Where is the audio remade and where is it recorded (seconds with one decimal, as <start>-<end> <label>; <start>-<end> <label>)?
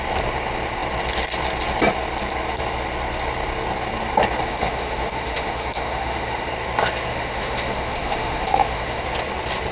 0.0-4.5 recorded; 4.5-6.5 remade; 6.5-7.1 recorded; 7.1-9.0 remade; 9.0-9.7 recorded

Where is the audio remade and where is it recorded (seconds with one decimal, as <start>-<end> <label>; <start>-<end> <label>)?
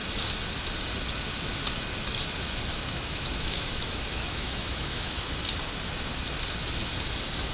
0.0-2.7 recorded; 2.7-5.2 remade; 5.2-7.5 recorded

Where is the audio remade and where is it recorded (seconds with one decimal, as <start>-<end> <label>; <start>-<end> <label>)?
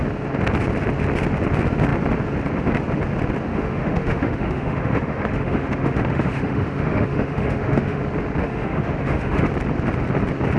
0.0-3.5 recorded; 3.5-8.0 remade; 8.0-8.4 recorded; 8.4-9.5 remade; 9.5-10.6 recorded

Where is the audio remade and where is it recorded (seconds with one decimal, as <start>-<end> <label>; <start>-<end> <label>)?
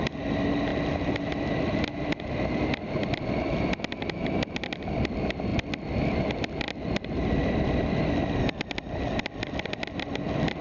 0.0-10.6 recorded